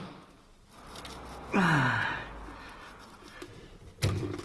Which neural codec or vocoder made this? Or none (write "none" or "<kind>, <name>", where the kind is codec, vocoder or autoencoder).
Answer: none